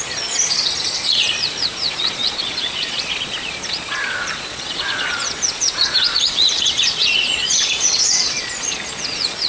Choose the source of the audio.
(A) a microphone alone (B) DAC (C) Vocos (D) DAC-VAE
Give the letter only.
C